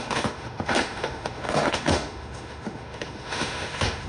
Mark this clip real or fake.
fake